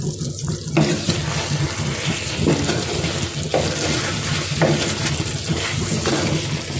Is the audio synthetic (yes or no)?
no